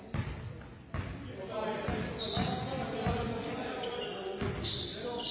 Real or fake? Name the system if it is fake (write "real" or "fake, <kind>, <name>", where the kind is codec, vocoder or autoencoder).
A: real